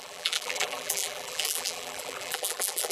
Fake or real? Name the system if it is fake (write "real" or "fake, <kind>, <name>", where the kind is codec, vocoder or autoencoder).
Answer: fake, vocoder, BigVGAN v2